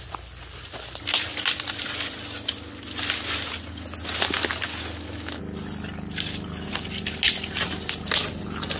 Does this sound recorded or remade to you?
recorded